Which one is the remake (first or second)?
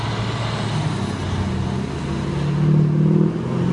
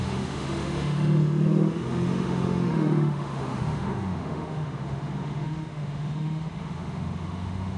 second